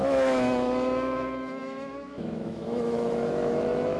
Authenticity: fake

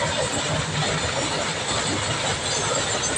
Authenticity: real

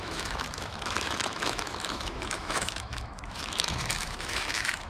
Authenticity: fake